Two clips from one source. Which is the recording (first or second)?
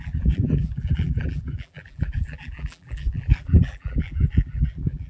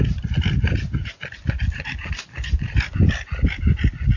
second